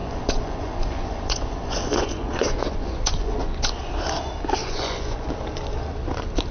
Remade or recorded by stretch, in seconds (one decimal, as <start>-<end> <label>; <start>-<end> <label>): 0.0-3.9 remade; 3.9-4.6 recorded; 4.6-5.3 remade; 5.3-6.5 recorded